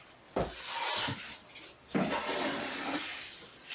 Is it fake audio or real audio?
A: real